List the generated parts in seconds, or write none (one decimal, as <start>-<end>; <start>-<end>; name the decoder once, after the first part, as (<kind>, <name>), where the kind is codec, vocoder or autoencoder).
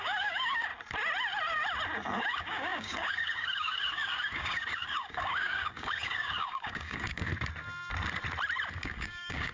0.0-0.7 (codec, DAC); 2.2-7.3; 8.7-9.5